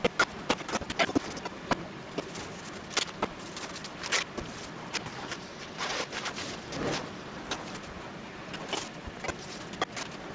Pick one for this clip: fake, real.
real